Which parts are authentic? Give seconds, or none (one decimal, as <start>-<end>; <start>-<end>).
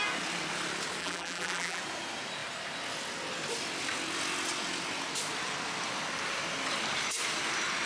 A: 0.0-1.0; 1.8-7.9